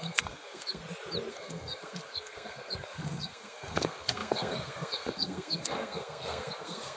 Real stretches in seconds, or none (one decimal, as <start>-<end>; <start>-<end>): 0.8-1.3